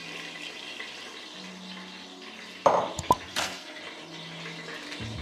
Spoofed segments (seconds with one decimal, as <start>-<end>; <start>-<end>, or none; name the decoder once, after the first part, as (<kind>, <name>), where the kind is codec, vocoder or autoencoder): 3.3-3.8 (codec, SNAC)